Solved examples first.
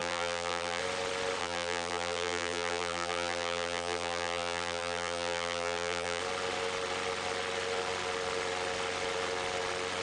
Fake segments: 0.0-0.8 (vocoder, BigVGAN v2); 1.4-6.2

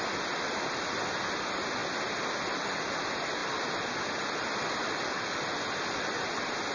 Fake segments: none

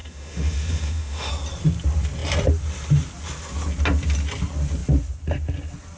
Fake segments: 0.0-1.3 (autoencoder, DAC-VAE)

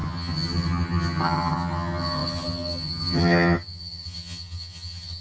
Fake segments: 0.0-5.2 (vocoder, HiFi-GAN)

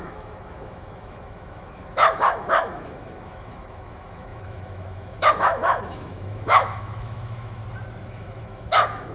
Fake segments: 0.0-7.6 (autoencoder, DAC-VAE); 8.1-9.1

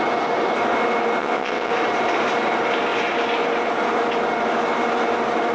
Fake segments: 1.2-1.7 (vocoder, WaveNeXt)

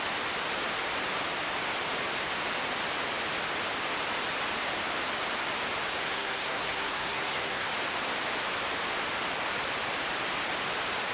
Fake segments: 6.0-7.7 (codec, SNAC)

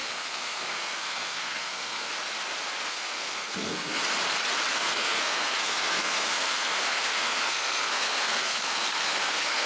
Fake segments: 0.0-2.1 (codec, SNAC); 2.9-4.0; 4.7-9.7